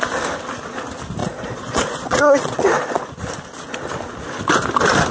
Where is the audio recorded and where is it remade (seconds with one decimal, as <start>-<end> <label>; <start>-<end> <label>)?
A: 0.0-1.2 recorded; 1.2-3.1 remade; 3.1-5.1 recorded